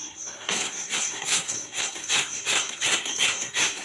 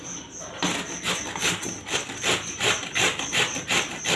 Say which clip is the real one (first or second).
second